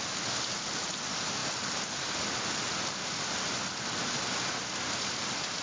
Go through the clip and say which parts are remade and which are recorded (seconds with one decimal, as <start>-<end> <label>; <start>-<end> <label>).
0.0-5.6 recorded